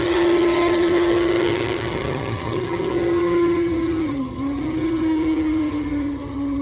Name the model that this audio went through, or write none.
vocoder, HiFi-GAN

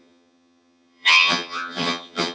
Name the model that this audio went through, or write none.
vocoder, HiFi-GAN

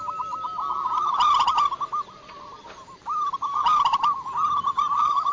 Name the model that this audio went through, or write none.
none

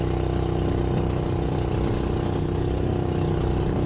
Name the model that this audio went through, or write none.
none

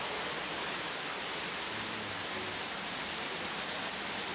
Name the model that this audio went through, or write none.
none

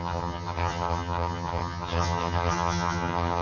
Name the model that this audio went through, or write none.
vocoder, HiFi-GAN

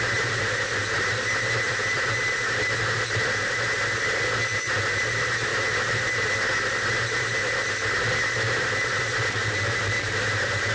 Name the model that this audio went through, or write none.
none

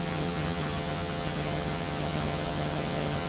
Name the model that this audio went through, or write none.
vocoder, HiFi-GAN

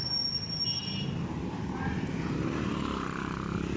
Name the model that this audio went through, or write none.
none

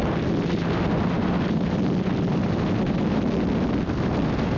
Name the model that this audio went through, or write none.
none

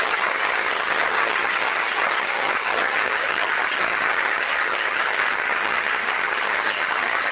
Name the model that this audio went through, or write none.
vocoder, HiFi-GAN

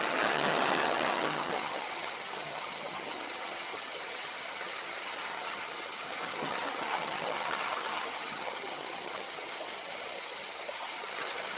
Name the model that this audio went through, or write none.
vocoder, HiFi-GAN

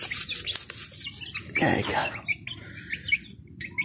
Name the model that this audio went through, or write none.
none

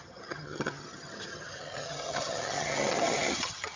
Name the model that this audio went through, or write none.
vocoder, HiFi-GAN